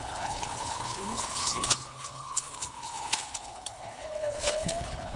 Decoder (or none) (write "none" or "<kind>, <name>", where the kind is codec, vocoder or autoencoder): codec, HILCodec